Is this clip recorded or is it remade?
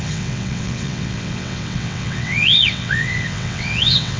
remade